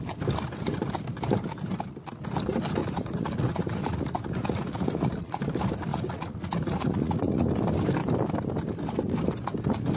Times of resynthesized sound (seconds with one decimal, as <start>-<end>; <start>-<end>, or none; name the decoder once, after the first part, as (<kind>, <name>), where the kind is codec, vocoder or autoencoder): 2.8-5.4 (vocoder, Vocos); 5.9-7.5